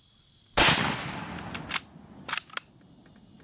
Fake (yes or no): no